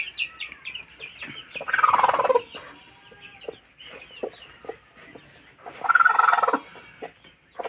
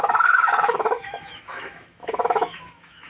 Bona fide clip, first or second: first